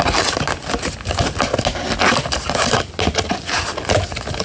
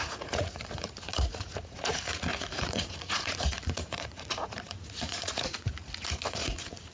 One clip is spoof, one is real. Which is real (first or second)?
first